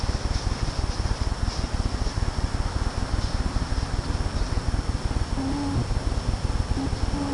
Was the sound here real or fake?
real